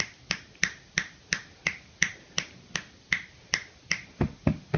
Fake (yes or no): no